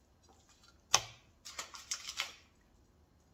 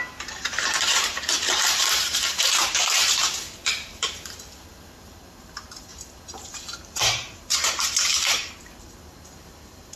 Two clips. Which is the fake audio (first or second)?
second